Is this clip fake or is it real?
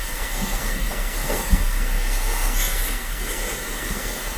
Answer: fake